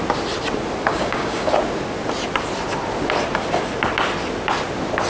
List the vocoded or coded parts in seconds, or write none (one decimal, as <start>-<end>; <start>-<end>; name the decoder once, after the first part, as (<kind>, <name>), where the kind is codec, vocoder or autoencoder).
0.9-1.5 (codec, DAC)